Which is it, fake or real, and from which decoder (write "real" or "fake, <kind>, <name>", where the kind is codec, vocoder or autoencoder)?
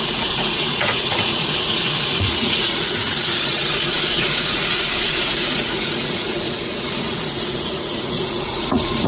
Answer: fake, vocoder, Vocos